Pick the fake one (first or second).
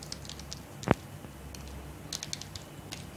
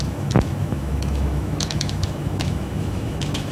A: second